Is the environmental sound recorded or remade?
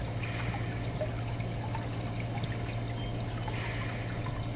recorded